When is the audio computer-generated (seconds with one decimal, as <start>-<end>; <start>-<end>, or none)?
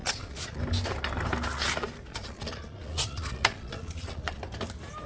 0.0-0.6; 2.1-4.4